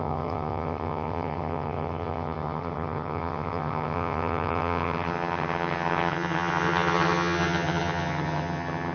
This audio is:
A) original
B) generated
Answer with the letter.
B